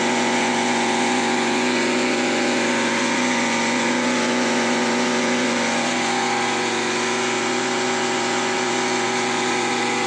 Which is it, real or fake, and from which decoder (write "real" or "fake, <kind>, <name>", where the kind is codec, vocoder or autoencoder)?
fake, vocoder, Vocos